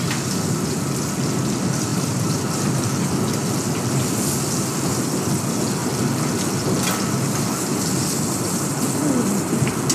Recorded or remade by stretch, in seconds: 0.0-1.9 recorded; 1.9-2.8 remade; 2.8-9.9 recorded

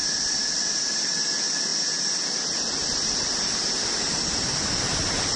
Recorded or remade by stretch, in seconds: 0.0-1.2 remade; 1.2-5.4 recorded

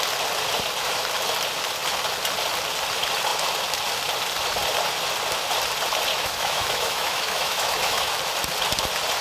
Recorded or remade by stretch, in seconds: 0.0-6.1 recorded; 6.1-8.2 remade; 8.2-9.2 recorded

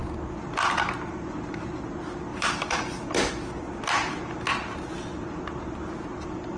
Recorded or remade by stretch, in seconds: 0.0-6.6 recorded